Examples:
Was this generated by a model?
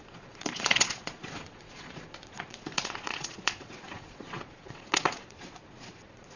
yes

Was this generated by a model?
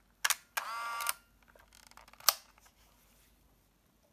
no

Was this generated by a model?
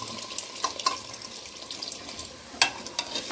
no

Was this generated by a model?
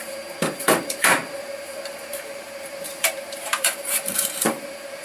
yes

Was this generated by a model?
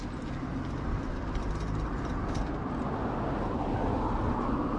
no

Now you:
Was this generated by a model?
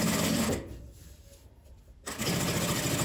no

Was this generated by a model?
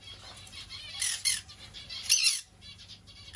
no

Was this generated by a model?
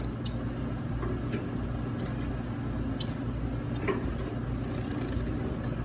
no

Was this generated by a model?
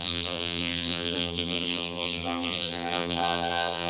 yes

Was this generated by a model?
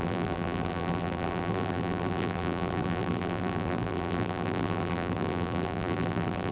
yes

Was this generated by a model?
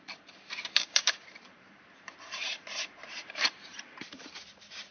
yes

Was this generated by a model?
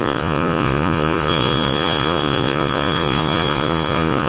yes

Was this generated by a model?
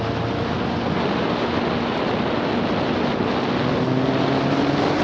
no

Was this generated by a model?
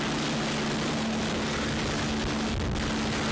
no